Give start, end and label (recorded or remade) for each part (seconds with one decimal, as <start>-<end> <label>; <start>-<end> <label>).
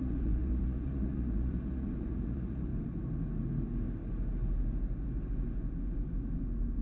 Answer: 0.0-2.7 remade; 2.7-6.8 recorded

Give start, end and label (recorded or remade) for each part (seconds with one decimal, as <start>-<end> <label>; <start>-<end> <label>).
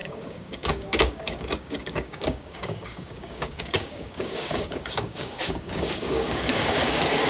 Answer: 0.0-7.3 remade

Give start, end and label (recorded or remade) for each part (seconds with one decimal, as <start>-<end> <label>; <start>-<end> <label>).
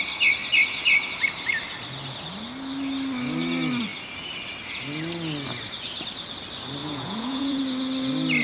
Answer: 0.0-6.8 recorded; 6.8-7.6 remade; 7.6-8.4 recorded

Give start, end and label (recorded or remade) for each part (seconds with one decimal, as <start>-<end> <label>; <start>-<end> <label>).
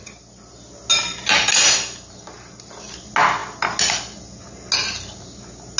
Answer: 0.0-5.8 recorded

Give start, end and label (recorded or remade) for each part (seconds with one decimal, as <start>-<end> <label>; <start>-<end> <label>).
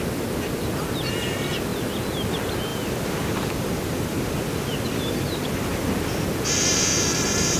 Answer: 0.0-2.7 recorded; 2.7-7.6 remade